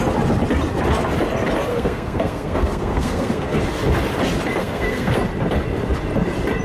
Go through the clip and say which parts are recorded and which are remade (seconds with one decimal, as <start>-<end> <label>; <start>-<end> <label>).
0.0-1.7 recorded; 1.7-3.6 remade; 3.6-4.6 recorded; 4.6-5.2 remade; 5.2-6.6 recorded